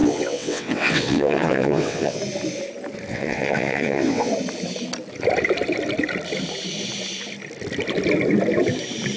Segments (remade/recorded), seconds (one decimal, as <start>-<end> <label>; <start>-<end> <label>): 0.0-2.2 remade; 2.2-3.1 recorded; 3.1-4.3 remade; 4.3-9.2 recorded